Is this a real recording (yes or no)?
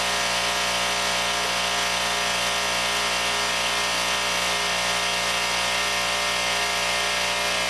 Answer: yes